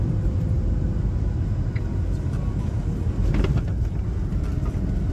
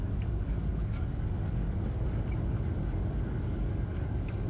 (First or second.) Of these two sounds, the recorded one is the first